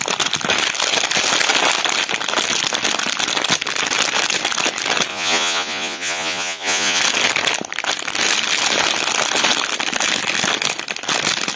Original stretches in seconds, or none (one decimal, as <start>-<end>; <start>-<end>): 0.0-5.1; 7.0-11.6